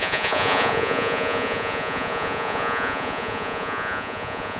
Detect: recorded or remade remade